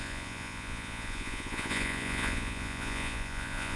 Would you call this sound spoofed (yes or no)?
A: yes